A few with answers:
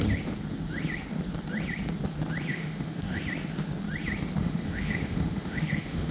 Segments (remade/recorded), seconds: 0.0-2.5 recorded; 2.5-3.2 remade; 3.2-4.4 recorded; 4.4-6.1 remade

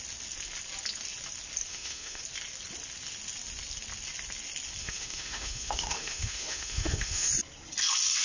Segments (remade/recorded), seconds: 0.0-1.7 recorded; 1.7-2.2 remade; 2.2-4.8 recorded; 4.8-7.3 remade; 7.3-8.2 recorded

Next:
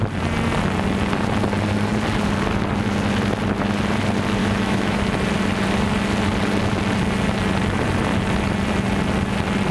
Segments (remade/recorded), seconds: 0.0-4.4 recorded; 4.4-5.0 remade; 5.0-9.7 recorded